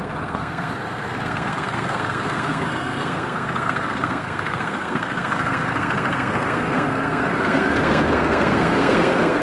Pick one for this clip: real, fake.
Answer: fake